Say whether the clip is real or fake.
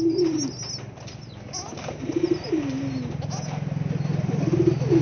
real